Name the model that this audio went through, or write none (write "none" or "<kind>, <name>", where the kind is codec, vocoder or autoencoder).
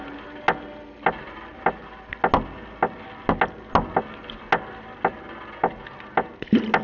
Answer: none